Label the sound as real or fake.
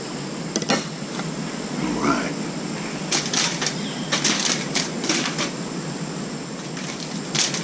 real